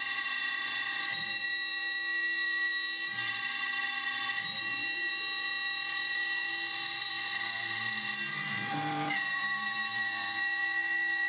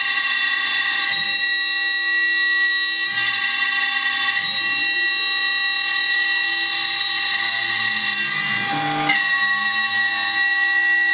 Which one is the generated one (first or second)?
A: first